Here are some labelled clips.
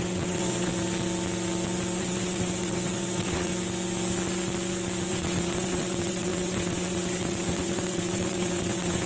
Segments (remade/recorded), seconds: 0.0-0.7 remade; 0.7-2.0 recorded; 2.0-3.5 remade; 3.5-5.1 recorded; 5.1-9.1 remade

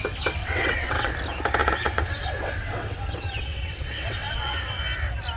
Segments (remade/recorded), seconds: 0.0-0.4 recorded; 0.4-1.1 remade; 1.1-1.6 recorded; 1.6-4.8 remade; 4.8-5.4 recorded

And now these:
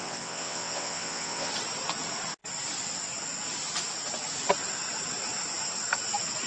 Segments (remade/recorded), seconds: 0.0-1.5 remade; 1.5-6.5 recorded

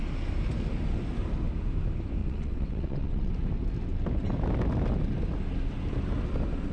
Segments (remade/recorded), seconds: 0.0-2.2 recorded; 2.2-3.3 remade; 3.3-6.7 recorded

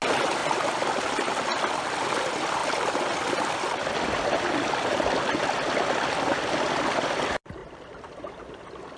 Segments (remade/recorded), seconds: 0.0-9.0 recorded